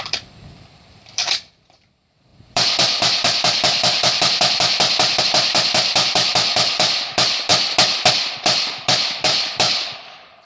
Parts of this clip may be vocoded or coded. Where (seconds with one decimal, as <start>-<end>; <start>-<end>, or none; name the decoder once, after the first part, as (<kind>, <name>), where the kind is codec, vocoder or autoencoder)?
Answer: 0.0-7.5 (vocoder, BigVGAN v2); 8.1-10.4